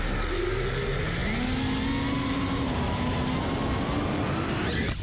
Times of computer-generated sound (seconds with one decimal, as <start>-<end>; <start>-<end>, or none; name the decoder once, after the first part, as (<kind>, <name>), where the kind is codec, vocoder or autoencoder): none